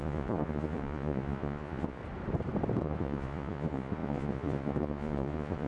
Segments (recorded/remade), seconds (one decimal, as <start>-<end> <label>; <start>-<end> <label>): 0.0-2.0 remade; 2.0-2.8 recorded; 2.8-5.7 remade